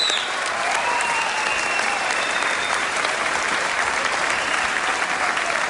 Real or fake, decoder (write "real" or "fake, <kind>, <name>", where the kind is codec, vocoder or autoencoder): fake, vocoder, BigVGAN v2